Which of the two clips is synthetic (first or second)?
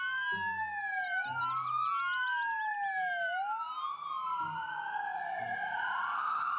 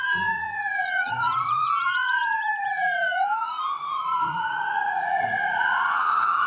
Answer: second